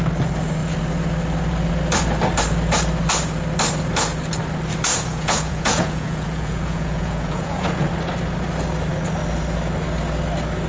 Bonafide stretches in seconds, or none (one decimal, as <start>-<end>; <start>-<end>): 0.0-4.9; 7.9-10.7